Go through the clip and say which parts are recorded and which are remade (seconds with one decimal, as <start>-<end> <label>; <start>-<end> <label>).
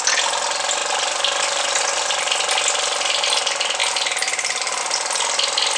0.0-5.8 recorded